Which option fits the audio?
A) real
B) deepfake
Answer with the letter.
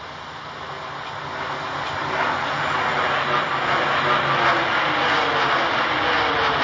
A